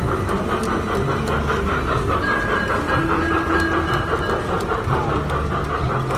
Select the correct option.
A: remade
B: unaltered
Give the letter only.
B